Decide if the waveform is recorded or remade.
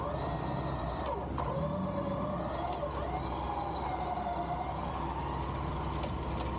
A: recorded